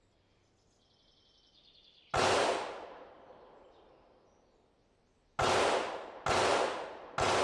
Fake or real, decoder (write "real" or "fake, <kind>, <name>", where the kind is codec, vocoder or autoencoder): real